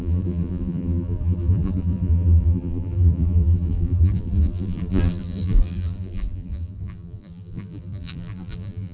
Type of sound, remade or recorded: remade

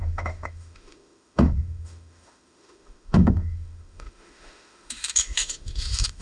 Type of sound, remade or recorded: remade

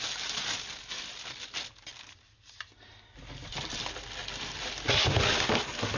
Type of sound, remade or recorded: recorded